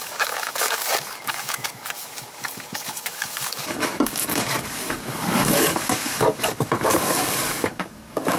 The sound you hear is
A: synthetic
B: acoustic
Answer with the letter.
A